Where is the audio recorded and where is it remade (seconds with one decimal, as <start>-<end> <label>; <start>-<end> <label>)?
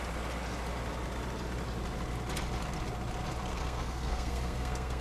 0.0-3.5 recorded; 3.5-5.0 remade